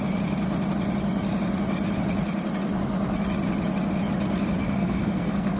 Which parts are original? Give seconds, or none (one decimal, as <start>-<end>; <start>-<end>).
0.0-4.6